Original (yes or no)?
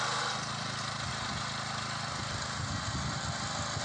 yes